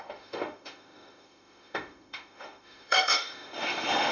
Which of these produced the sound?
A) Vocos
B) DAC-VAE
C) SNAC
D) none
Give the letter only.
B